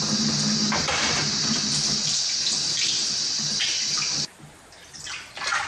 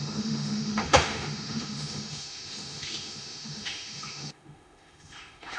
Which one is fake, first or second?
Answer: second